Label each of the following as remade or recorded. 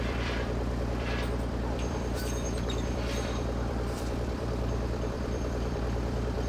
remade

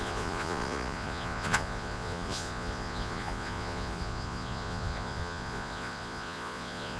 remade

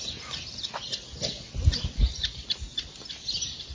recorded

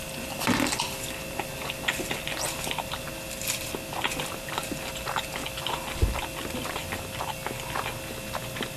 recorded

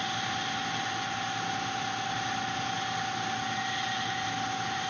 recorded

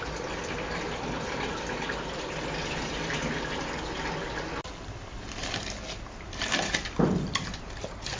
recorded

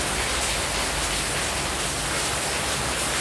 recorded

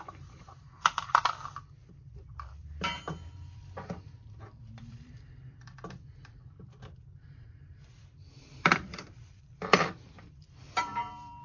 remade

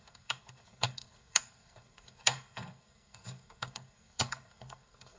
remade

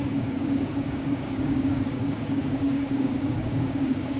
remade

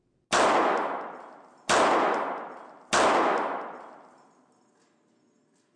recorded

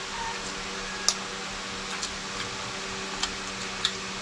recorded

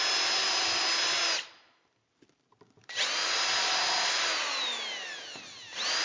recorded